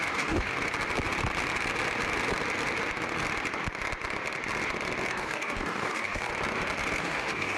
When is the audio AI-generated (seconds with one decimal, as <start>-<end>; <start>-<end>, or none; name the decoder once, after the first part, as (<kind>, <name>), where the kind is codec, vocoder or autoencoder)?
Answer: 0.0-0.5 (codec, DAC); 5.1-6.3; 7.0-7.6